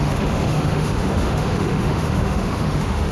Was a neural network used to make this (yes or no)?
yes